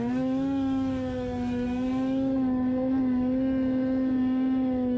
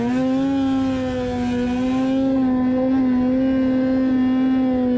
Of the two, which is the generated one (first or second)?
first